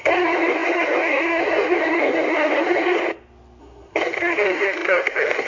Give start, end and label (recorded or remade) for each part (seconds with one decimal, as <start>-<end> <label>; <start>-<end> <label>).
0.0-3.0 remade; 3.0-3.6 recorded; 3.6-5.5 remade